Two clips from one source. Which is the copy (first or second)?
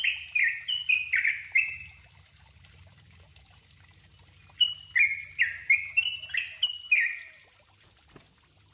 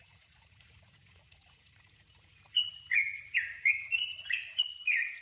second